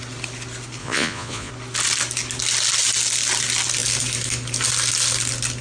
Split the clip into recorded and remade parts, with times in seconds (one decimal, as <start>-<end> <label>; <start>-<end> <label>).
0.0-0.8 recorded; 0.8-1.5 remade; 1.5-5.6 recorded